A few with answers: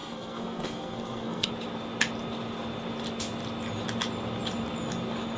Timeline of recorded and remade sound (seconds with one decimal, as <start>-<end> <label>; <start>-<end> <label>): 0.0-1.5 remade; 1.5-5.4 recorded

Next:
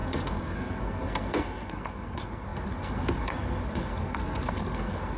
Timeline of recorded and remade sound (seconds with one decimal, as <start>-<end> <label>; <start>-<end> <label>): 0.0-5.2 remade

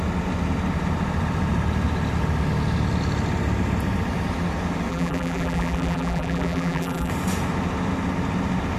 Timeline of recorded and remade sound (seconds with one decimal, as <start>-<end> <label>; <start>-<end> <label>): 0.0-4.9 recorded; 4.9-7.1 remade; 7.1-8.8 recorded